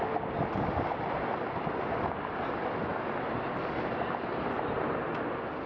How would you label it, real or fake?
real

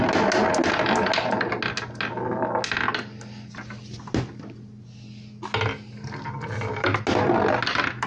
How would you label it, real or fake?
real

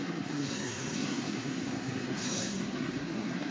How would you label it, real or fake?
fake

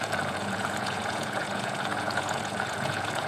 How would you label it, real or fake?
fake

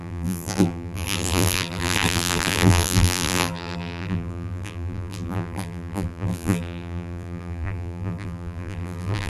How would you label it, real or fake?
fake